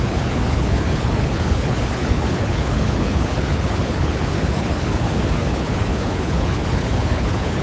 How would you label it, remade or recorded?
remade